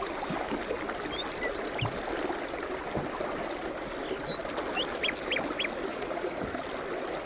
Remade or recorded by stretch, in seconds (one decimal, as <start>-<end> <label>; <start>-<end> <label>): 0.0-5.9 recorded; 5.9-6.4 remade; 6.4-7.3 recorded